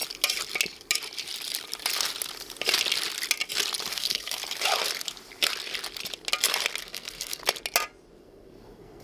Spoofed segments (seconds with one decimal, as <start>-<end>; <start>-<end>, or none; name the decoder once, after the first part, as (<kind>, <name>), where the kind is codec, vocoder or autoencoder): 3.9-4.4 (codec, SNAC); 6.8-7.4; 8.2-9.0